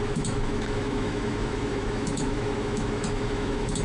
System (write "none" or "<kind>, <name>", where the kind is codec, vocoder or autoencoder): autoencoder, DAC-VAE